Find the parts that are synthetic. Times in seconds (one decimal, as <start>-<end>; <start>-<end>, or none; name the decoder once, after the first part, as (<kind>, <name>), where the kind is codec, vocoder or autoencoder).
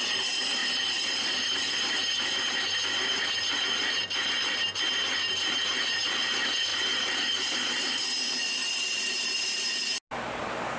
none